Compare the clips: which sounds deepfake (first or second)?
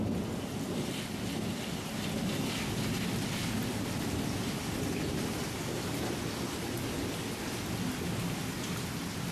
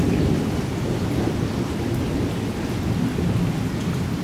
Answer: second